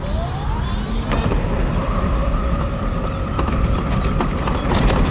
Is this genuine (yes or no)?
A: yes